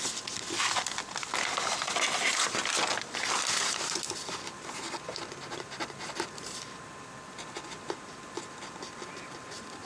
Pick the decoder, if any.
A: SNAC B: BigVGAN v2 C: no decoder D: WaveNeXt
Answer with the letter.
C